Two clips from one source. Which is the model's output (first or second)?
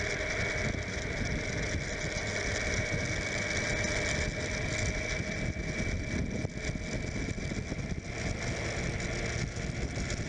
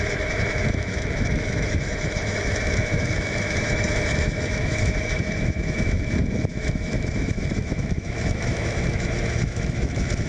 second